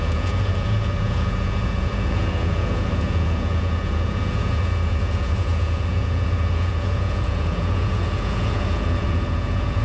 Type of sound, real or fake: fake